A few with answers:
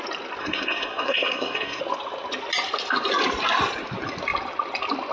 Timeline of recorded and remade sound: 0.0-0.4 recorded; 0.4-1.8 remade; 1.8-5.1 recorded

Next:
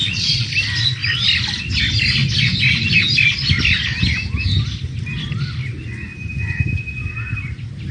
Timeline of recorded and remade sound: 0.0-0.5 remade; 0.5-7.9 recorded